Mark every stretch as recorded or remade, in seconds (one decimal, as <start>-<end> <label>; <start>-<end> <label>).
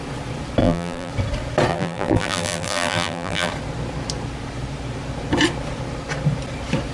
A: 0.0-0.6 recorded; 0.6-1.1 remade; 1.1-1.7 recorded; 1.7-3.5 remade; 3.5-6.9 recorded